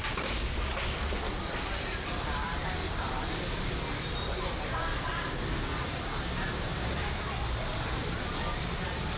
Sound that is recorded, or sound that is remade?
recorded